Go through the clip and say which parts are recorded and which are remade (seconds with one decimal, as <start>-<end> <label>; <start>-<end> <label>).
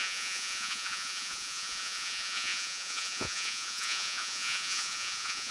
0.0-5.5 remade